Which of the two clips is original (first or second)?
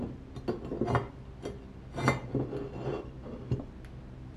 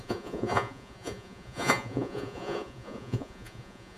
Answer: first